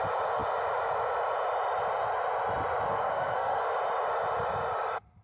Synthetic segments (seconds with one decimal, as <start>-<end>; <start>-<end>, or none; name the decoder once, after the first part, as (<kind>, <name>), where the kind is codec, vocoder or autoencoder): 2.9-3.6 (codec, SNAC)